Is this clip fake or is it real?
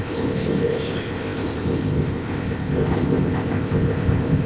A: fake